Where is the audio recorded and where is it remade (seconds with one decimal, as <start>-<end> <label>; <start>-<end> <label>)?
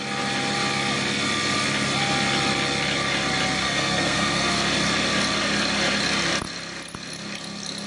0.0-3.6 recorded; 3.6-4.5 remade; 4.5-7.9 recorded